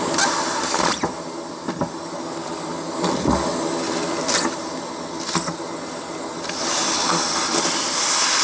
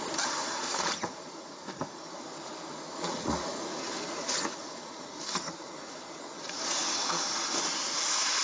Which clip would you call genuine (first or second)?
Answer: first